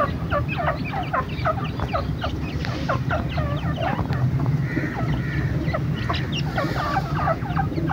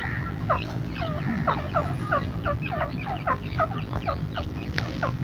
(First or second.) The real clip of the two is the first